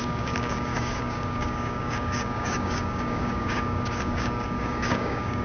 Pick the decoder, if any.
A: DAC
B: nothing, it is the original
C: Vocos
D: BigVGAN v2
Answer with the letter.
A